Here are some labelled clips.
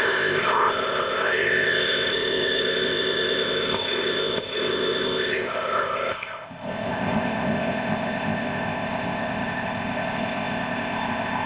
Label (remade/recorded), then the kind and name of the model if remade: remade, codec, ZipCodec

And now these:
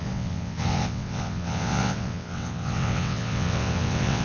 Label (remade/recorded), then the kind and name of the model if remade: remade, vocoder, WaveNeXt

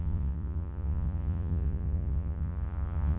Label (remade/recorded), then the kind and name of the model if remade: remade, vocoder, Vocos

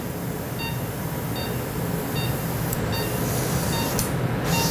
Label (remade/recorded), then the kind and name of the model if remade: recorded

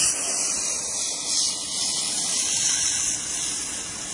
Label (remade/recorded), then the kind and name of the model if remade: recorded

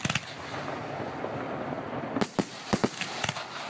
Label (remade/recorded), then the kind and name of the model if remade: recorded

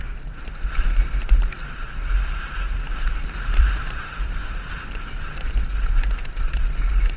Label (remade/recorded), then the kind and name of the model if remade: remade, vocoder, BigVGAN v2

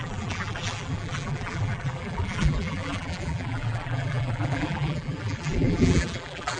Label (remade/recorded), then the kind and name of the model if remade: remade, vocoder, BigVGAN v2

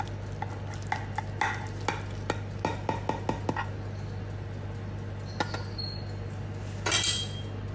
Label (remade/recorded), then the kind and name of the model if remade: recorded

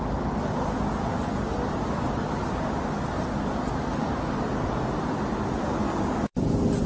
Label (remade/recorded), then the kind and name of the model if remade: recorded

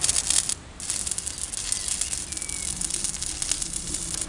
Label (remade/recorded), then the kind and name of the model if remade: recorded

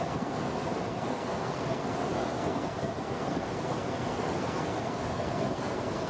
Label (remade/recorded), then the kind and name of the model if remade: remade, codec, SNAC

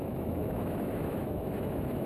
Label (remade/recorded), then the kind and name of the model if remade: remade, autoencoder, DAC-VAE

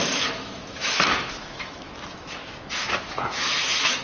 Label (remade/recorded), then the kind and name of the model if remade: remade, autoencoder, DAC-VAE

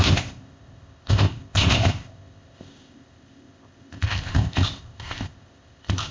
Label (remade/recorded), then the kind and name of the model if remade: remade, codec, ZipCodec